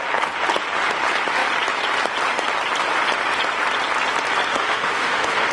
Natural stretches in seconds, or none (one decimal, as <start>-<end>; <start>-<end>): 0.0-4.5